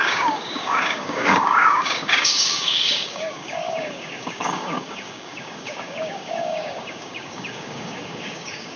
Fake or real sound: fake